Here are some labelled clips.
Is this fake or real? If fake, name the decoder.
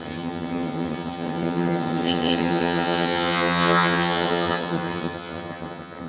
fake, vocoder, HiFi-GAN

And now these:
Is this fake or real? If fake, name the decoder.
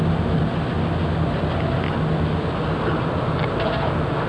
real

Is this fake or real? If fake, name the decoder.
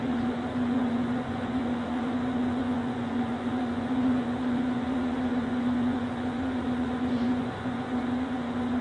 fake, vocoder, Vocos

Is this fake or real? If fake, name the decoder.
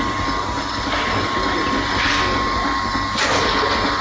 real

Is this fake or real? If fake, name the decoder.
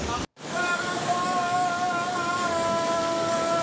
fake, codec, DAC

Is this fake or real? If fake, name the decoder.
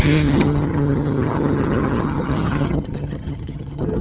fake, vocoder, HiFi-GAN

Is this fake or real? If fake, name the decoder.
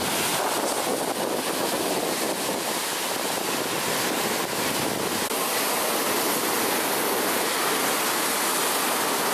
real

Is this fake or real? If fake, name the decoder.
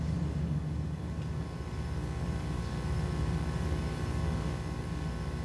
fake, codec, DAC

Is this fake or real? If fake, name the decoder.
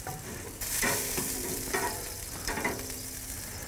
fake, vocoder, BigVGAN v2